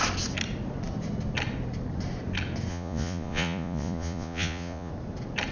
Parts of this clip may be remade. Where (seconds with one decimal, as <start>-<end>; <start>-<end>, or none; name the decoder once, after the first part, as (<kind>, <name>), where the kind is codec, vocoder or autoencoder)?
2.7-4.9 (vocoder, Vocos)